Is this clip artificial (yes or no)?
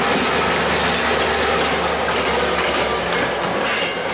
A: no